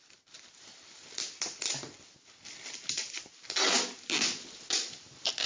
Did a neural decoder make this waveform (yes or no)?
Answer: no